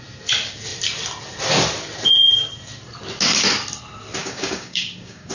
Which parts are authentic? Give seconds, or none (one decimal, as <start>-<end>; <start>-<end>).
0.0-4.2